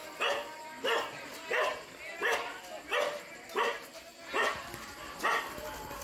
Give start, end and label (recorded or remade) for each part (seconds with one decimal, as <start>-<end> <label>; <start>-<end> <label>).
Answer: 0.0-6.0 recorded